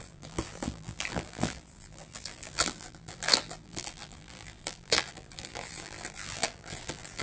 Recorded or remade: remade